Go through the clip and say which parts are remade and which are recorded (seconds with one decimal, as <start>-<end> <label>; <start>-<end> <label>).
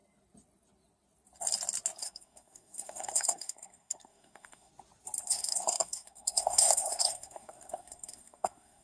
0.0-2.0 recorded; 2.0-4.7 remade; 4.7-5.2 recorded; 5.2-8.8 remade